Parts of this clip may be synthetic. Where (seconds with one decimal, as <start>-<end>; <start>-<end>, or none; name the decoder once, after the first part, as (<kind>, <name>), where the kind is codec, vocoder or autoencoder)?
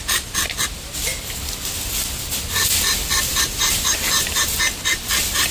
3.3-4.5 (vocoder, BigVGAN v2)